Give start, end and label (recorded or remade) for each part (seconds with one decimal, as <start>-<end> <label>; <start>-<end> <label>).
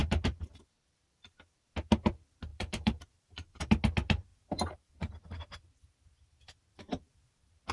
0.0-0.6 remade; 0.6-2.5 recorded; 2.5-3.7 remade; 3.7-4.3 recorded; 4.3-5.0 remade; 5.0-7.7 recorded